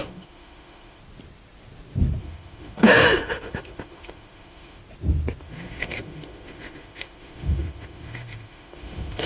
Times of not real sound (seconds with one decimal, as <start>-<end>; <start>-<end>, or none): 0.0-1.0; 2.2-4.8; 5.4-9.3